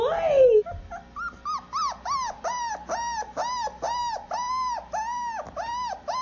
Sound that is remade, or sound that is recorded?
recorded